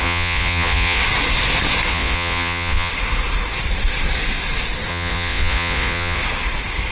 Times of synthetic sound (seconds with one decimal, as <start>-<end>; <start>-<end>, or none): 0.0-1.0; 1.9-2.9; 4.9-6.2